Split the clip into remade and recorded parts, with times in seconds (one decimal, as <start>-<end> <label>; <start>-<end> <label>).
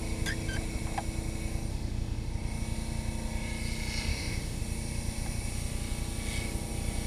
0.0-1.7 recorded; 1.7-2.3 remade; 2.3-4.1 recorded; 4.1-4.6 remade; 4.6-7.1 recorded